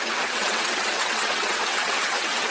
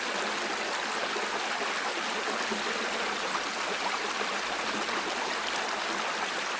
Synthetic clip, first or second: first